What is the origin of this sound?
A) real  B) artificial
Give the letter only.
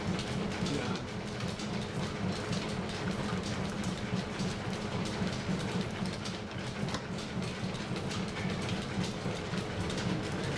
A